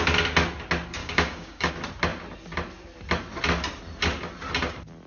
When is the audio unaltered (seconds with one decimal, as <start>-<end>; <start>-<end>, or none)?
0.0-1.0; 1.7-5.1